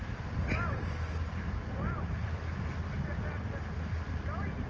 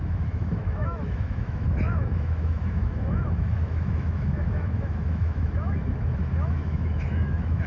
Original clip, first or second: first